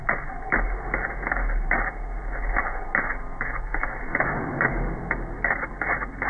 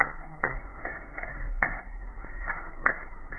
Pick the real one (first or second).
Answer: first